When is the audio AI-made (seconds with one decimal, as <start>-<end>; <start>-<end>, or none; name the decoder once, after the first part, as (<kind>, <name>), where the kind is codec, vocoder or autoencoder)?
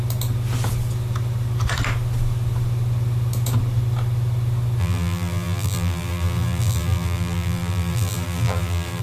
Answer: 4.8-9.0 (vocoder, BigVGAN v2)